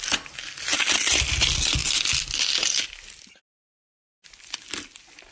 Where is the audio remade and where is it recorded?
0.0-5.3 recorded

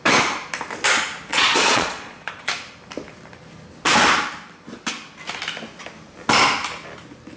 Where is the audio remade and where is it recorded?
0.0-1.3 recorded; 1.3-2.5 remade; 2.5-7.4 recorded

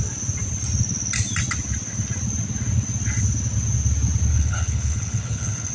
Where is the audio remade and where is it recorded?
0.0-4.3 recorded; 4.3-5.7 remade

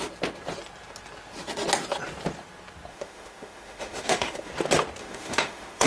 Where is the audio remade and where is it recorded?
0.0-2.9 recorded; 2.9-4.5 remade; 4.5-5.0 recorded; 5.0-5.9 remade

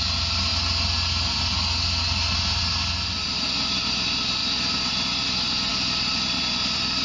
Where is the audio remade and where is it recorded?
0.0-7.0 recorded

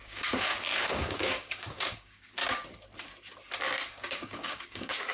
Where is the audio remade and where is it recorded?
0.0-2.4 remade; 2.4-3.9 recorded; 3.9-5.1 remade

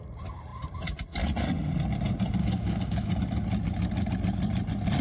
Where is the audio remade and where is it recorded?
0.0-2.4 recorded; 2.4-3.1 remade; 3.1-5.0 recorded